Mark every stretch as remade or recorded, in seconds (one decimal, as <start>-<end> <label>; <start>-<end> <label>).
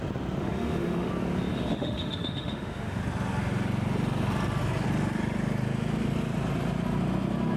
0.0-0.4 recorded; 0.4-1.1 remade; 1.1-1.5 recorded; 1.5-3.0 remade; 3.0-7.6 recorded